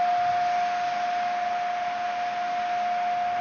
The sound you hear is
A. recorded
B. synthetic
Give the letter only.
A